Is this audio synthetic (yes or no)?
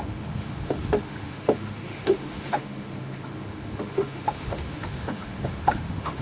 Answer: yes